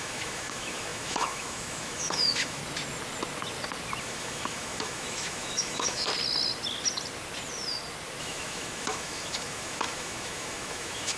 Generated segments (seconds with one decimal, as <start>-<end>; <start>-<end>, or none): 0.0-2.6; 4.0-6.1; 8.2-11.2